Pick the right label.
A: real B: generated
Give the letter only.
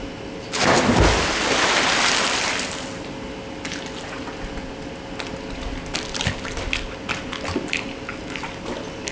A